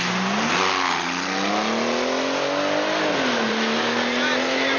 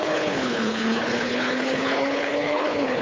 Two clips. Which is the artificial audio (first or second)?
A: second